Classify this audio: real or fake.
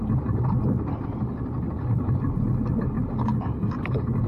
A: real